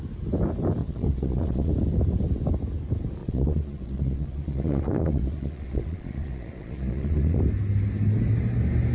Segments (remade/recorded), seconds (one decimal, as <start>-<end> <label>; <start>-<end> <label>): 0.0-0.8 recorded; 0.8-1.7 remade; 1.7-3.2 recorded; 3.2-7.4 remade; 7.4-8.9 recorded